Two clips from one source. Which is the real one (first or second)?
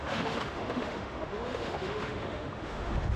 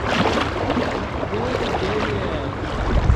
second